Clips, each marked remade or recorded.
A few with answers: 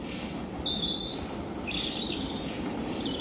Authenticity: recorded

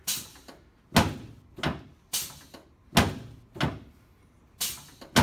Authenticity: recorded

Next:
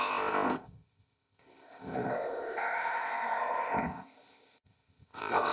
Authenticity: remade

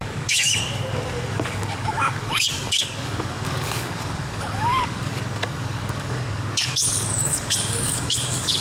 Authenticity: remade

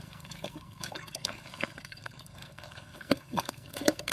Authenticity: remade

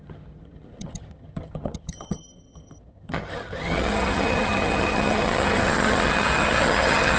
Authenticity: remade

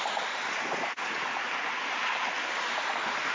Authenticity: recorded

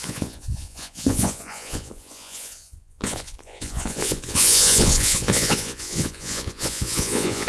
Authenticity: remade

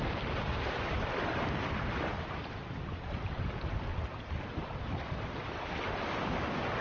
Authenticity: recorded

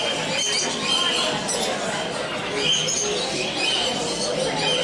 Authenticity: recorded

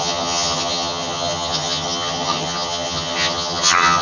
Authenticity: remade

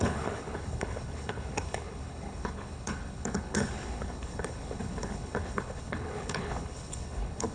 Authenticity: remade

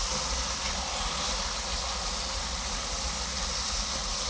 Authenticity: recorded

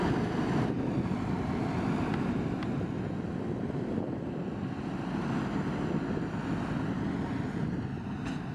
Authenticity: recorded